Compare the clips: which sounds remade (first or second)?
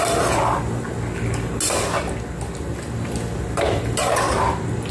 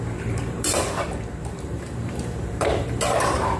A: second